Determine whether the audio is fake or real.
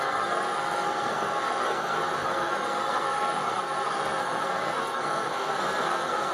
fake